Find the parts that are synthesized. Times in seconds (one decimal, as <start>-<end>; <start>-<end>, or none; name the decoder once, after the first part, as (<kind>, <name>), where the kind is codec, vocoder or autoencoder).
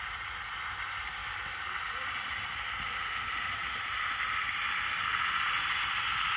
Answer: none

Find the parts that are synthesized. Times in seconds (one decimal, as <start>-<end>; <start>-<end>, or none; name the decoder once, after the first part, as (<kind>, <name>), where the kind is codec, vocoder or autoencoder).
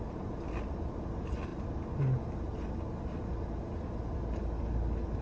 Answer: none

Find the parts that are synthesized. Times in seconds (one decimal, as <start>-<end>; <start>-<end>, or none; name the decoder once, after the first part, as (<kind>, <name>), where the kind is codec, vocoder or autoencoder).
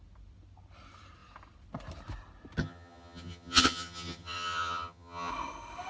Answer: 2.6-5.3 (vocoder, HiFi-GAN)